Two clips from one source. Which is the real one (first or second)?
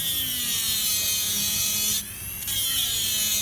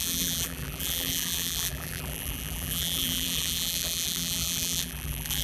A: first